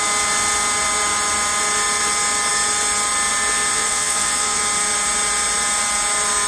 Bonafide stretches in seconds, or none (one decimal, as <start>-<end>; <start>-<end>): 0.0-3.7; 4.6-6.5